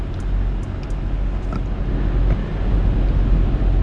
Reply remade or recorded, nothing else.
recorded